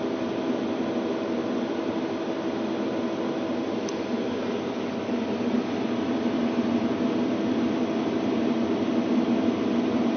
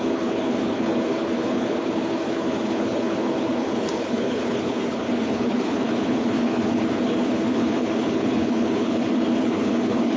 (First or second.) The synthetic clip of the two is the second